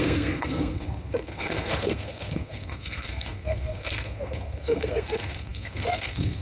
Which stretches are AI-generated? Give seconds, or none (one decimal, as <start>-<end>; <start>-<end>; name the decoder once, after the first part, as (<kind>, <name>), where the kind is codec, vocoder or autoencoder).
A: 0.0-6.4 (codec, SNAC)